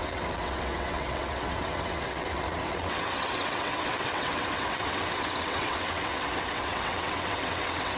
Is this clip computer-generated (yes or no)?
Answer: yes